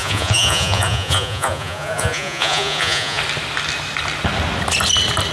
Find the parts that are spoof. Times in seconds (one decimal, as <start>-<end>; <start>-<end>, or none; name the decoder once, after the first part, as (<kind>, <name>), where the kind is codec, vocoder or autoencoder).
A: 0.0-3.2 (vocoder, Vocos)